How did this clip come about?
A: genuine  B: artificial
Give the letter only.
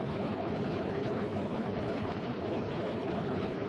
B